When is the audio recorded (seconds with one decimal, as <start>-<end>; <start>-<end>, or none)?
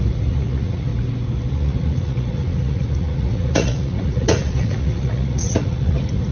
0.9-1.5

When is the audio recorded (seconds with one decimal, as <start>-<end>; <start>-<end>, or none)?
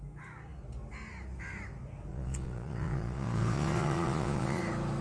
0.0-2.1; 4.6-5.0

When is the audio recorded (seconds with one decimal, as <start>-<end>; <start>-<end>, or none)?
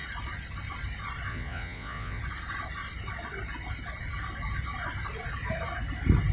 0.0-1.3; 2.2-6.3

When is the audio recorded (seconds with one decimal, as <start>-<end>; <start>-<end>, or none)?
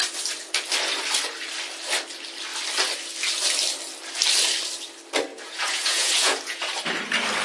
0.0-5.3; 6.7-7.4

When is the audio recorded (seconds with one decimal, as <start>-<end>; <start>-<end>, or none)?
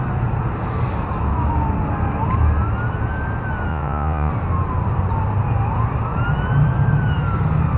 0.0-3.7; 4.3-7.8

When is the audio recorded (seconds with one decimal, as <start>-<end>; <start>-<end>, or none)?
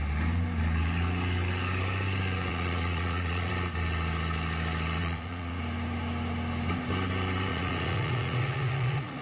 0.0-2.5; 3.5-5.0; 5.6-7.5